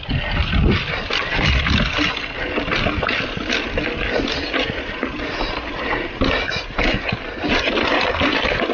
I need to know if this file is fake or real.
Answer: real